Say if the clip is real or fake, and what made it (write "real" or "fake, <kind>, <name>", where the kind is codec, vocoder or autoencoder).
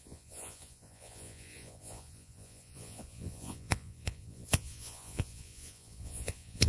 fake, vocoder, Vocos